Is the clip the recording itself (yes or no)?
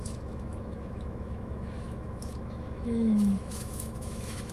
no